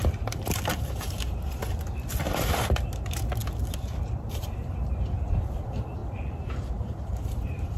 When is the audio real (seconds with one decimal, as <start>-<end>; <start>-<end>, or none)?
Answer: 0.0-0.7; 1.6-2.6; 3.4-4.4